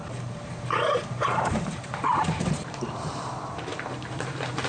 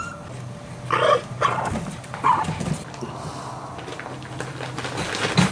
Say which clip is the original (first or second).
second